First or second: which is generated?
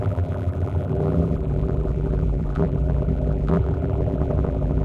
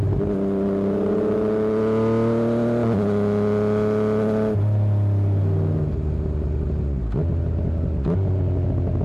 first